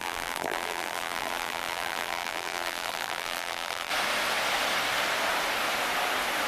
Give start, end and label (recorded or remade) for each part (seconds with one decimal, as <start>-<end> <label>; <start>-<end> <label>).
0.0-3.9 remade; 3.9-6.5 recorded